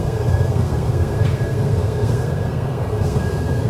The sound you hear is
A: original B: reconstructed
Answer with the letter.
B